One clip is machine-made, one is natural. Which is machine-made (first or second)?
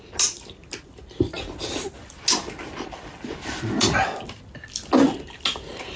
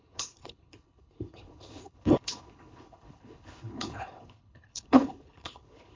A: second